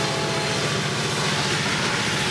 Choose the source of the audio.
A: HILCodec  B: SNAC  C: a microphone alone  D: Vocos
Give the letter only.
C